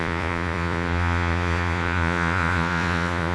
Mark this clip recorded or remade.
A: remade